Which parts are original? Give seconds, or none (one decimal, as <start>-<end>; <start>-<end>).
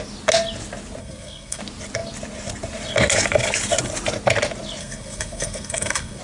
0.0-1.0; 1.6-4.8